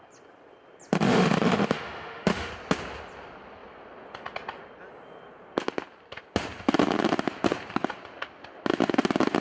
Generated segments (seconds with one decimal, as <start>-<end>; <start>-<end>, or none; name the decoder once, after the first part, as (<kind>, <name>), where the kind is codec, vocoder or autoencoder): 0.9-2.5 (autoencoder, DAC-VAE)